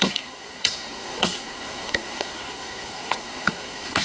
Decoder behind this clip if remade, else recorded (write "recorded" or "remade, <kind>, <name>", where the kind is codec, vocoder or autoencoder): remade, codec, SNAC